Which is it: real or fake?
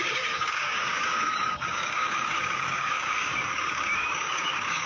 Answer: fake